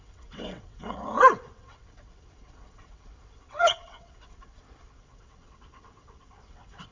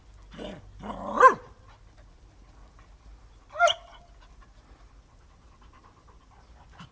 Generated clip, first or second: first